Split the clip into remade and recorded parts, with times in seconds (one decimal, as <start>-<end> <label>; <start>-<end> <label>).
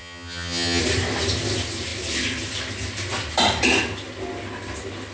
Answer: 0.0-0.8 remade; 0.8-5.1 recorded